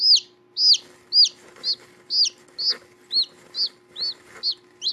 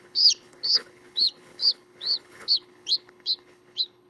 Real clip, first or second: first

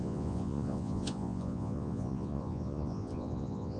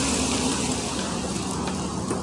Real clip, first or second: second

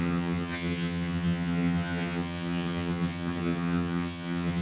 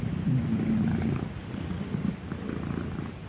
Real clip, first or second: second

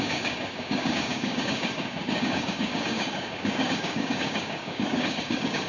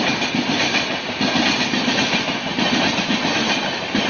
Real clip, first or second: second